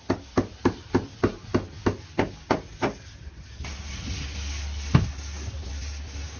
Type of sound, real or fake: real